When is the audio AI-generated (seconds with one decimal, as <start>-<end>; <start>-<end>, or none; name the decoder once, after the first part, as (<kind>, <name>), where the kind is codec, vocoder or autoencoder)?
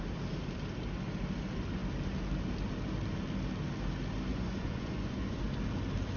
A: 4.3-5.4 (vocoder, Vocos)